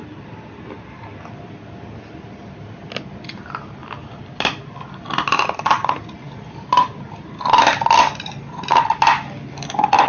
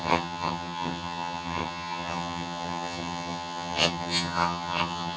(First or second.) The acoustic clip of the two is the first